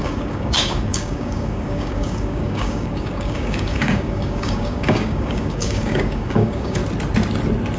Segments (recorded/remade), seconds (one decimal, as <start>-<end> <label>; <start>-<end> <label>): 0.0-6.8 remade; 6.8-7.8 recorded